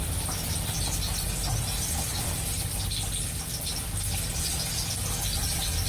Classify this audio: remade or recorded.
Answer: recorded